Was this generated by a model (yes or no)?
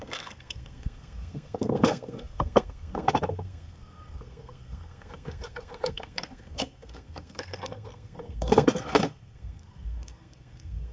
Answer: yes